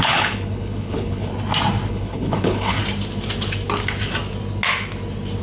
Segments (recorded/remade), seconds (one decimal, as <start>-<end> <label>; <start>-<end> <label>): 0.0-1.3 remade; 1.3-1.9 recorded; 1.9-2.8 remade; 2.8-5.4 recorded